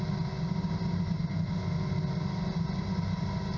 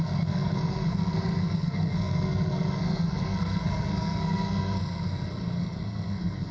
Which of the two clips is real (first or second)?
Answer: first